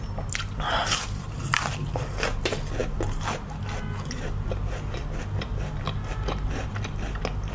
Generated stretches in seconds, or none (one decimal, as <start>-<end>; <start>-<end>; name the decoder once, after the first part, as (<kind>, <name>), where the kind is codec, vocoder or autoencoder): 0.8-2.1 (vocoder, BigVGAN v2)